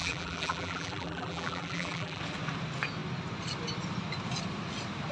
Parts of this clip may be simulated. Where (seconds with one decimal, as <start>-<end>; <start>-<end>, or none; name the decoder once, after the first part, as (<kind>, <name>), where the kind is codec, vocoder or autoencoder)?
0.0-2.2 (vocoder, BigVGAN v2)